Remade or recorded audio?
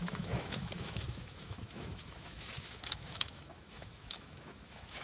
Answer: remade